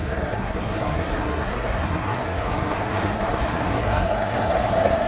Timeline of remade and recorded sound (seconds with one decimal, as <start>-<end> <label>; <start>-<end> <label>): 0.0-5.1 remade